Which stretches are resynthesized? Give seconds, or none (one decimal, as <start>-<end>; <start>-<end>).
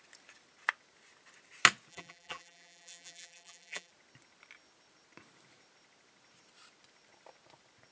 1.9-3.9